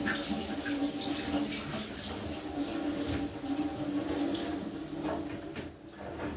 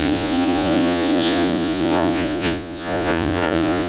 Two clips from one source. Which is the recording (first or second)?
first